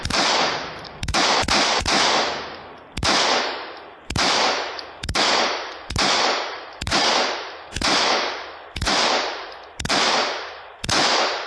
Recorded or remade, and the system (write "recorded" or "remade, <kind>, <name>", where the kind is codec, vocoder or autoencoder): remade, vocoder, BigVGAN v2